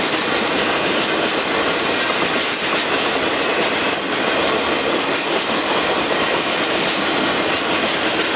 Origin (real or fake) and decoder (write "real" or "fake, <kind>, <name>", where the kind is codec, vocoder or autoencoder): real